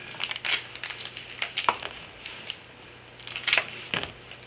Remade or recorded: recorded